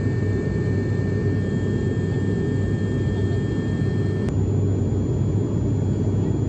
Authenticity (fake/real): real